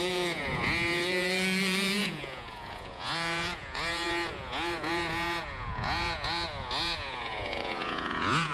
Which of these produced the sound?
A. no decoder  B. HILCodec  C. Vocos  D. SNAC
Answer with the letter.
C